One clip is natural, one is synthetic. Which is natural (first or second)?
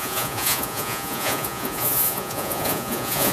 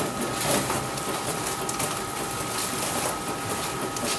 second